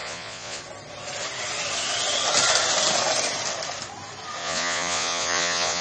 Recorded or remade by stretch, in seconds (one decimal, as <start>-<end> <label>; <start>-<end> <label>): 0.0-0.6 remade; 0.6-4.4 recorded; 4.4-5.8 remade

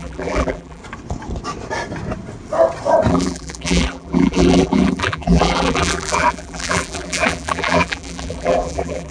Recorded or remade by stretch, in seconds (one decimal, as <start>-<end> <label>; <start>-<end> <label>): 0.0-0.8 remade; 0.8-3.1 recorded; 3.1-9.1 remade

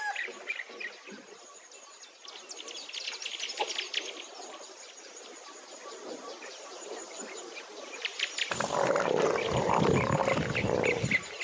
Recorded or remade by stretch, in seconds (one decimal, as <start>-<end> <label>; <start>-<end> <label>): 0.0-5.8 recorded; 5.8-8.3 remade; 8.3-11.4 recorded

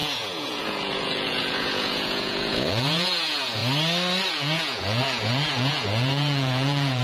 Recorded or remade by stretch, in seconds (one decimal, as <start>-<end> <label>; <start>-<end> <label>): 0.0-3.6 remade; 3.6-4.3 recorded; 4.3-7.0 remade

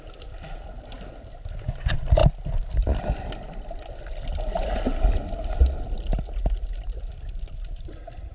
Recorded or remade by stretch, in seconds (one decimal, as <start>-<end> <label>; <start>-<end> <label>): 0.0-8.3 recorded

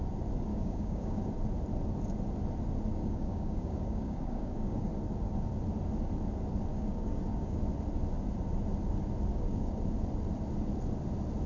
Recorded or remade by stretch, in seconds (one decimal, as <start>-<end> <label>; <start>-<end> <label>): 0.0-0.5 recorded; 0.5-1.3 remade; 1.3-2.9 recorded; 2.9-4.9 remade; 4.9-6.7 recorded; 6.7-7.6 remade; 7.6-9.3 recorded; 9.3-9.8 remade; 9.8-11.5 recorded

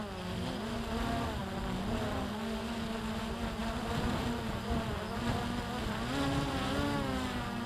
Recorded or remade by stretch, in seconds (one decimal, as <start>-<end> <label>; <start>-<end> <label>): 0.0-7.7 recorded

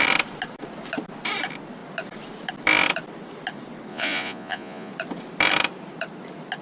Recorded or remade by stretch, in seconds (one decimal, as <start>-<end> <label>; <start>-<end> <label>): 0.0-3.9 recorded; 3.9-4.9 remade; 4.9-6.6 recorded